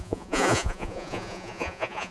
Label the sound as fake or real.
fake